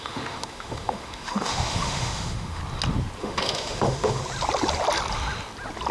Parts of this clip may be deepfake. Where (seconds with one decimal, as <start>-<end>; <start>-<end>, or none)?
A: 0.0-2.6; 3.2-4.2